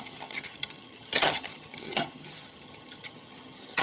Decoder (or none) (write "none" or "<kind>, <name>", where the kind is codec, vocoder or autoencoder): vocoder, HiFi-GAN